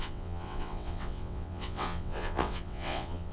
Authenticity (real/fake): fake